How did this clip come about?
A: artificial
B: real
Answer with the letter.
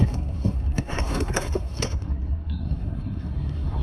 A